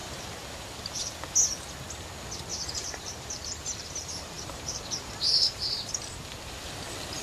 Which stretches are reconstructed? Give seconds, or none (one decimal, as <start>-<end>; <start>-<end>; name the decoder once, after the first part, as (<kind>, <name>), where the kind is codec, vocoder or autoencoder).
2.5-5.9 (vocoder, BigVGAN v2)